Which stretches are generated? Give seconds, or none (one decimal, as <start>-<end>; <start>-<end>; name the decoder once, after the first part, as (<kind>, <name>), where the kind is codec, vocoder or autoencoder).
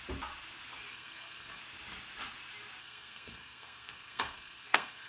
0.9-1.6 (codec, SNAC); 2.8-5.1